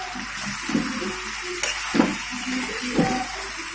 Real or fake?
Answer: real